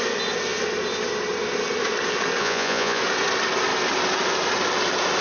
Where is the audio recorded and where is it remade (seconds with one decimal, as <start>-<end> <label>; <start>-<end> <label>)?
0.0-2.4 recorded; 2.4-3.0 remade; 3.0-5.2 recorded

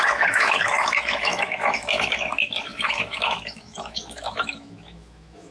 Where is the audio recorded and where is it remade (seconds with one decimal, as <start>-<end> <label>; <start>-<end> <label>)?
0.0-5.5 remade

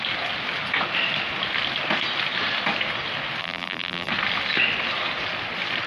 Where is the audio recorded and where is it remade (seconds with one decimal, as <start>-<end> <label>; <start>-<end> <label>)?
0.0-3.4 recorded; 3.4-4.1 remade; 4.1-5.9 recorded